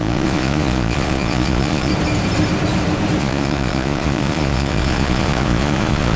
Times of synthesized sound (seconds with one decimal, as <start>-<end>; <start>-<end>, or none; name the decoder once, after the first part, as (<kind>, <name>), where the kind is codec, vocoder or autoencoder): 0.0-1.9 (vocoder, Vocos); 3.2-6.2